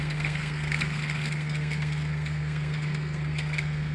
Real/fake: fake